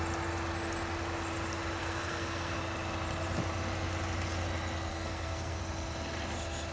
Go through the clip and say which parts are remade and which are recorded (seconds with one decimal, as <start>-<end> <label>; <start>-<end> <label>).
0.0-1.8 recorded; 1.8-2.6 remade; 2.6-4.9 recorded; 4.9-5.6 remade; 5.6-6.7 recorded